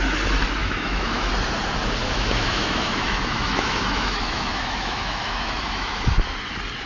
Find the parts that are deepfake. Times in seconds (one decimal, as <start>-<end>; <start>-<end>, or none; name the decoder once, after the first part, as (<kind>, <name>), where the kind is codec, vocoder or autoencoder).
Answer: 0.6-1.3 (autoencoder, DAC-VAE); 2.0-6.1